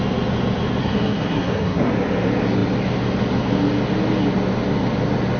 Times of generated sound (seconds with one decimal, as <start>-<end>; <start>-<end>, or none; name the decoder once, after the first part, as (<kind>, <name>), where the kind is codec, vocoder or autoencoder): 0.8-1.9 (codec, SNAC)